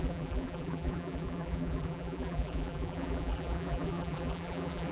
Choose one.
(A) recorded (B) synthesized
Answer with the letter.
B